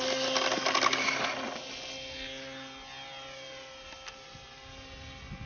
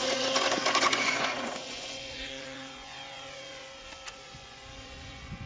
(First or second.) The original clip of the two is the first